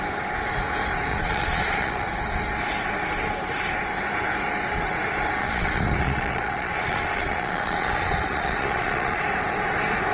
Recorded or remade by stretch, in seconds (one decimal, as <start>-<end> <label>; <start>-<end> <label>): 0.0-1.1 recorded; 1.1-2.1 remade; 2.1-5.4 recorded; 5.4-9.2 remade; 9.2-10.1 recorded